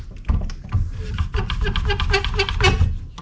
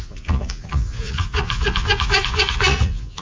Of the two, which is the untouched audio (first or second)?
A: first